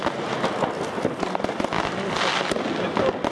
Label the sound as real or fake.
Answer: real